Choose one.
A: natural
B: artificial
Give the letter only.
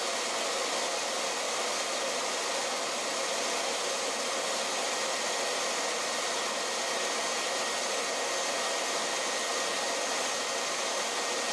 A